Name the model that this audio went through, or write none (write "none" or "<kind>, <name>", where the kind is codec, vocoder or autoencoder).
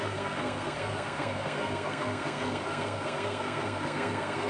codec, SNAC